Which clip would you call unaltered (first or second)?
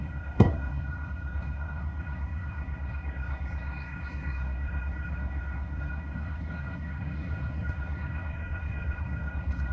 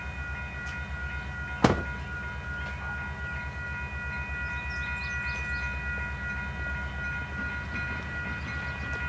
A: second